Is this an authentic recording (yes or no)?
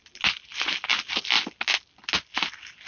yes